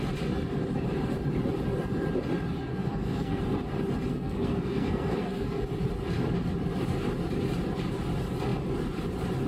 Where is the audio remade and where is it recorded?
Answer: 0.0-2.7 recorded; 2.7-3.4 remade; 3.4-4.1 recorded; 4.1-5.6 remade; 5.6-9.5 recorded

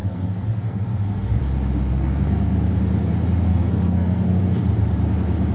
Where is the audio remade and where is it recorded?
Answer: 0.0-1.4 remade; 1.4-1.9 recorded; 1.9-2.7 remade; 2.7-3.5 recorded; 3.5-4.4 remade; 4.4-5.5 recorded

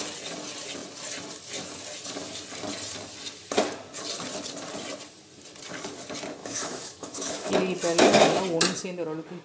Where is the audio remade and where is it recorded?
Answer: 0.0-6.4 recorded; 6.4-7.5 remade; 7.5-7.9 recorded; 7.9-8.4 remade; 8.4-9.4 recorded

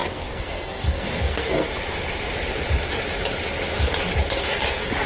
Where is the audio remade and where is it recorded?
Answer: 0.0-1.7 remade; 1.7-4.3 recorded; 4.3-5.1 remade

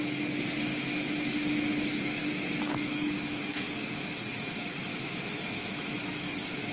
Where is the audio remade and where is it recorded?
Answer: 0.0-0.7 recorded; 0.7-3.4 remade; 3.4-4.9 recorded; 4.9-6.7 remade